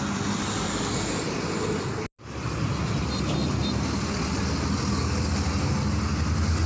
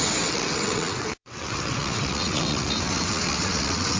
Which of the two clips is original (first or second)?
first